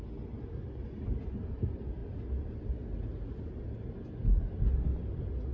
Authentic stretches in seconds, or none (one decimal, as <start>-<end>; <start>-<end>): 0.0-5.5